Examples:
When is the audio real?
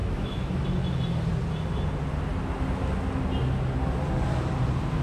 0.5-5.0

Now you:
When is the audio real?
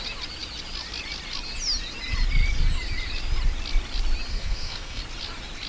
0.0-4.3; 5.0-5.7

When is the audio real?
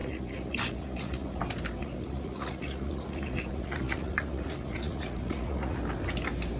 1.4-1.8; 5.8-6.6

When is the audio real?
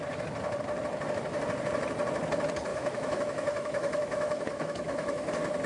0.0-2.7; 5.3-5.7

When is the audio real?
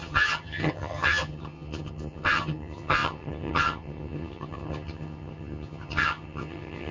none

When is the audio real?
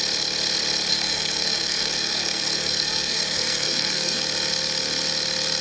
0.0-0.9; 4.2-5.6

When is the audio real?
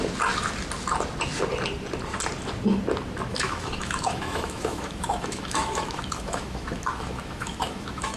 0.0-3.3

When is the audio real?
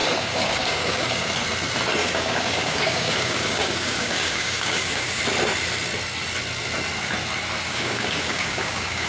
1.3-2.0; 5.2-7.6